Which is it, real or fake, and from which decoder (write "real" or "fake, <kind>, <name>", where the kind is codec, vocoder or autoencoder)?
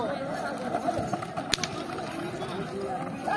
real